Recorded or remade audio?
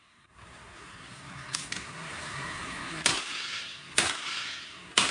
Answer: remade